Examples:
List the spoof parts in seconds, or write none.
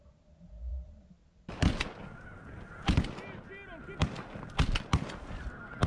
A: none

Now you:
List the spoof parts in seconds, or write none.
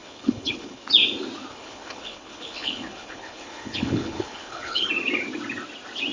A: 0.0-0.8 (codec, HILCodec); 1.5-4.9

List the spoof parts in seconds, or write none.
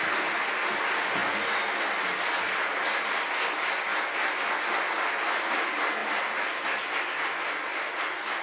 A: none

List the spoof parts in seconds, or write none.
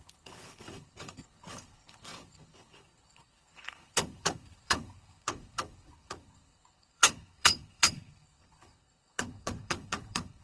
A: 0.0-10.4 (codec, HILCodec)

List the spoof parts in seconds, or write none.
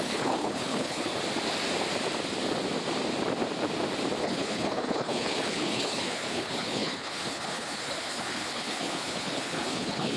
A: 0.0-1.1 (codec, HILCodec); 4.2-10.2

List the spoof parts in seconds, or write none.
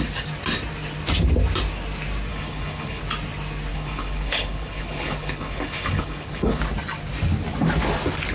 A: 2.3-3.0 (codec, HILCodec); 3.7-6.6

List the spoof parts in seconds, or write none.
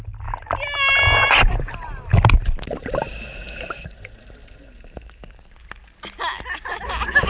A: none